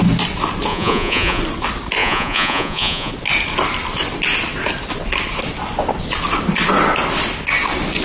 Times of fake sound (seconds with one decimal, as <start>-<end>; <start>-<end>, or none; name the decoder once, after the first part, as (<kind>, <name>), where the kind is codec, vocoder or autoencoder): 0.7-1.4 (vocoder, Vocos); 2.0-3.1